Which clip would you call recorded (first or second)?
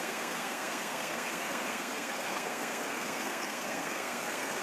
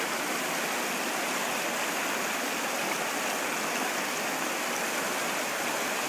second